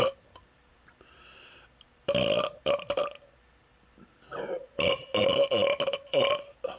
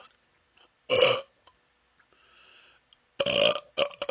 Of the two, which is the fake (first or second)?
first